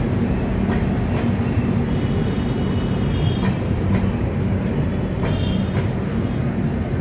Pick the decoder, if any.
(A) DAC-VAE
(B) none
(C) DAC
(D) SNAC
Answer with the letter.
B